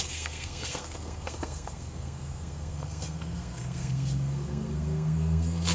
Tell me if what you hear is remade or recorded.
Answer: remade